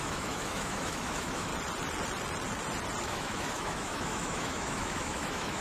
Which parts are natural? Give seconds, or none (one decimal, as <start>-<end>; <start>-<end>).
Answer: 1.5-3.0

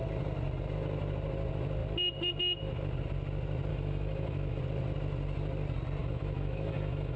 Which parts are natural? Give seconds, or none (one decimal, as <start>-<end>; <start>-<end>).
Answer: 0.0-3.7; 4.6-6.0

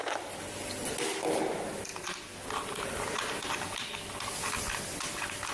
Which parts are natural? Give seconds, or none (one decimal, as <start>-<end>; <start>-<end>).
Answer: 0.0-5.5

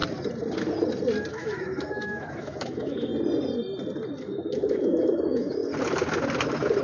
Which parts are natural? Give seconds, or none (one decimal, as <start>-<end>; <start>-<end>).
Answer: 0.0-1.3; 3.1-4.2; 5.6-6.8

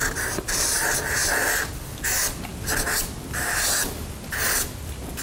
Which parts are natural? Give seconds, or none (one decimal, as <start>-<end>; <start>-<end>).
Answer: 0.0-5.2

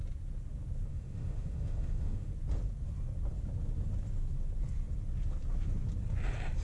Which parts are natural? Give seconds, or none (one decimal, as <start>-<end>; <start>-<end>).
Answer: 0.0-0.9; 2.3-6.6

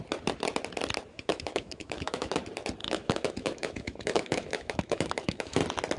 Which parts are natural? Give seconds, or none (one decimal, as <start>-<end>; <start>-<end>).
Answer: 0.0-1.1; 2.4-2.8; 5.6-6.0

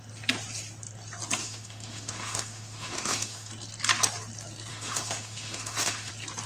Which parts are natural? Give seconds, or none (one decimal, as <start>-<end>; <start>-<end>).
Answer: 0.0-1.4; 3.5-4.7; 6.1-6.5